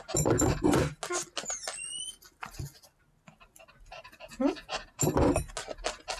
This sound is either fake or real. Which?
real